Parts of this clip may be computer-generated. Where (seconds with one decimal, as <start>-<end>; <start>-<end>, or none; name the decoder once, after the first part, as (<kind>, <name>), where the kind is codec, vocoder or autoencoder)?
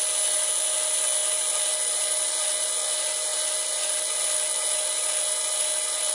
none